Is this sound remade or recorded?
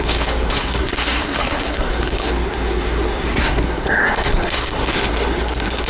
remade